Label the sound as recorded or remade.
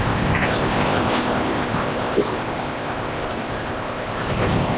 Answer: remade